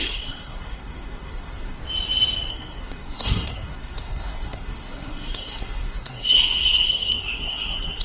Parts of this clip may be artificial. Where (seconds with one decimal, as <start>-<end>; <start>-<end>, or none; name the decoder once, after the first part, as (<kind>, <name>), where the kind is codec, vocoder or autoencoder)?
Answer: 0.0-1.8 (codec, SNAC); 2.5-8.0